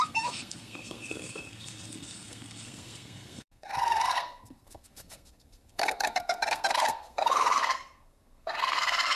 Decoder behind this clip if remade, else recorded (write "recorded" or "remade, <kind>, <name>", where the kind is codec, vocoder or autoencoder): remade, codec, SNAC